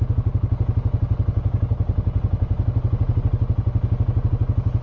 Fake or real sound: real